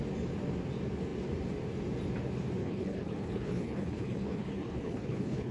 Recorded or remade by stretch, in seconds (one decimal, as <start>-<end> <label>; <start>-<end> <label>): 0.0-2.6 recorded; 2.6-5.5 remade